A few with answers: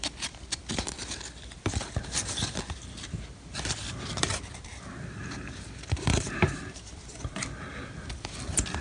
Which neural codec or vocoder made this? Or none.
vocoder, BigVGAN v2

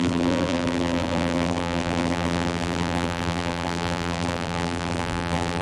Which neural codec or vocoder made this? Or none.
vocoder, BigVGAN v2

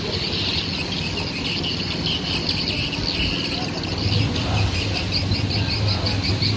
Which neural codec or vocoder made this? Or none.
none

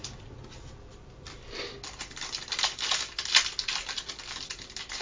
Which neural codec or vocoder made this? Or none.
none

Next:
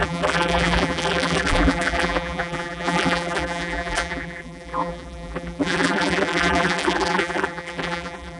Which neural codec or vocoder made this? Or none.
vocoder, BigVGAN v2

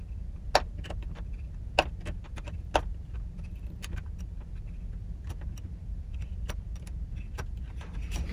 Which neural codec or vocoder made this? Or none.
none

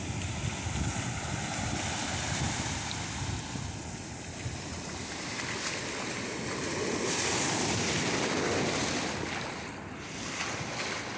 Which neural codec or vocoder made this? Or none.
none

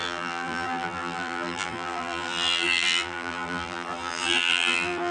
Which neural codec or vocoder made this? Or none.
vocoder, BigVGAN v2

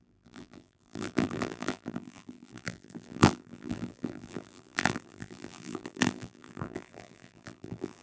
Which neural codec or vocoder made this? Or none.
vocoder, BigVGAN v2